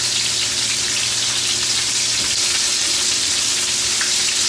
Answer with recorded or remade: recorded